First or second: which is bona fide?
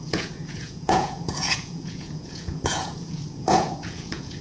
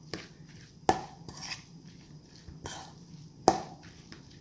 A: second